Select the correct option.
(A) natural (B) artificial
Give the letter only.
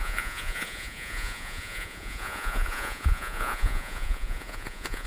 B